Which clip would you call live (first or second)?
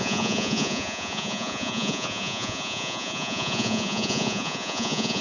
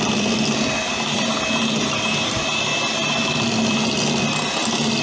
second